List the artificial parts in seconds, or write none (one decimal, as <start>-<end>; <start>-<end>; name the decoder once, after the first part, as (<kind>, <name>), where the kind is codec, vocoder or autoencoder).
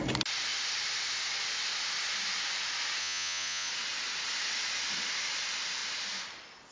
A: 3.0-3.7 (vocoder, Vocos)